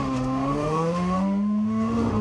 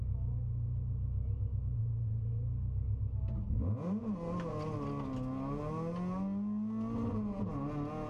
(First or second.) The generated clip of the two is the first